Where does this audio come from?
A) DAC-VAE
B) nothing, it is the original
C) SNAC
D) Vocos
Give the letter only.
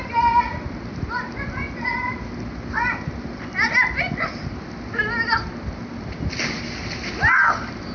B